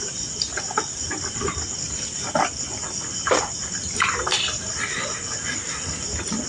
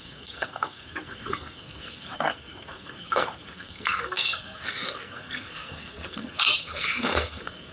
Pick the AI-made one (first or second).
second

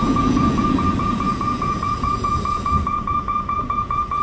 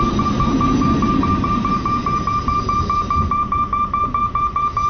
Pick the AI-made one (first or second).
first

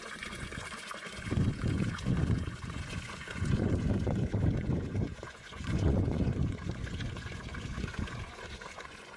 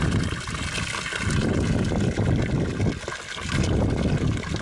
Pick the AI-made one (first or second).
first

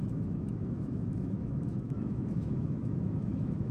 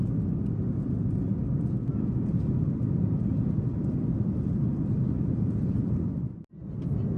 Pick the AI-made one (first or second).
first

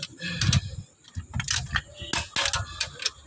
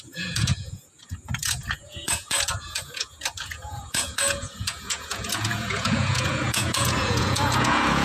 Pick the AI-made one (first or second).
second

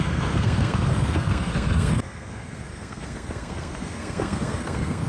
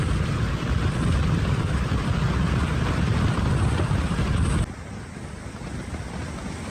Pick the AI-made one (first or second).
first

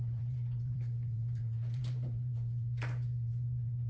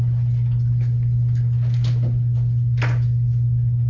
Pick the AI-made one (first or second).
first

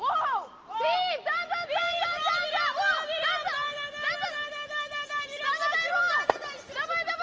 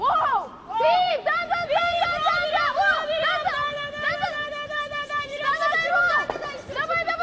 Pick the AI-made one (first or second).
second